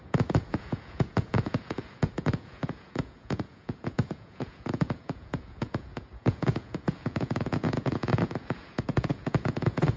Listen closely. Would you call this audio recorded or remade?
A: remade